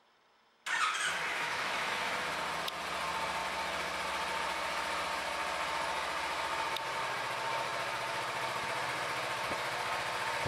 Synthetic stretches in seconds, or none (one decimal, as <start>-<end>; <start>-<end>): 1.3-2.2